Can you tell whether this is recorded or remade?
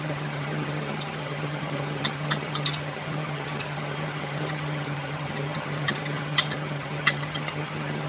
remade